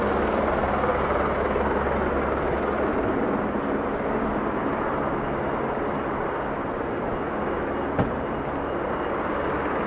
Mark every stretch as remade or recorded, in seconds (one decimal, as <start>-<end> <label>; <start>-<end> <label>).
0.0-9.9 recorded

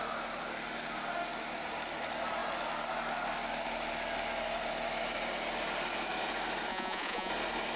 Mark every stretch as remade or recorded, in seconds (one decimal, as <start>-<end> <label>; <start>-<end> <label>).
0.0-6.7 recorded; 6.7-7.3 remade; 7.3-7.8 recorded

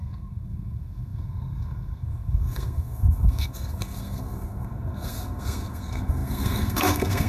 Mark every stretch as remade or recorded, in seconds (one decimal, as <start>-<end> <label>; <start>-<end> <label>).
0.0-7.3 remade

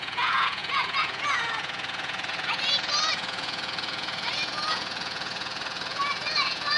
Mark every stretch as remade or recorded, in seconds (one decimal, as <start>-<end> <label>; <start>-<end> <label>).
0.0-6.8 remade

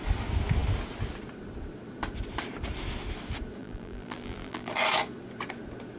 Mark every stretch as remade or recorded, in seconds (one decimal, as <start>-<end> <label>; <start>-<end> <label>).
0.0-3.6 recorded; 3.6-4.7 remade; 4.7-6.0 recorded

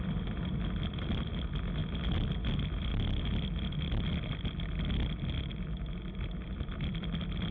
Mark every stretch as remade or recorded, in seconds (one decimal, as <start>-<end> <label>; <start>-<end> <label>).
0.0-1.8 remade; 1.8-2.5 recorded; 2.5-2.9 remade; 2.9-6.1 recorded; 6.1-7.5 remade